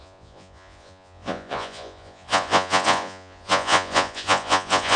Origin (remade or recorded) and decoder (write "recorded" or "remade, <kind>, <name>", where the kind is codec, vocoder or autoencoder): remade, vocoder, Vocos